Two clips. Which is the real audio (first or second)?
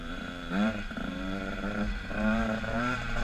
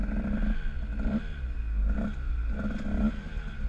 second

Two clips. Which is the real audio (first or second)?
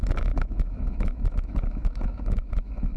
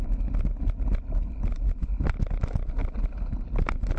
second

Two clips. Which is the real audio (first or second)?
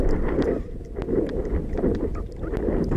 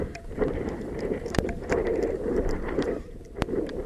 first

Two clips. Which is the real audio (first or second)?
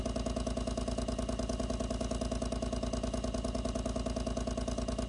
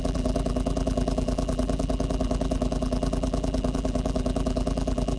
first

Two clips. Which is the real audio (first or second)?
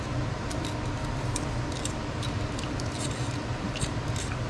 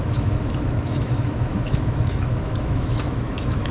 first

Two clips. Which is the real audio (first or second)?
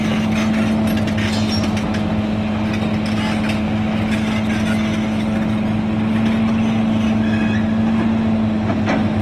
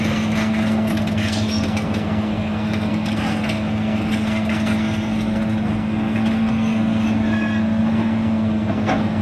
first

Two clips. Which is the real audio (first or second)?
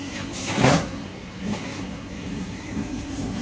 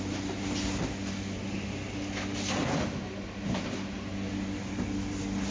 second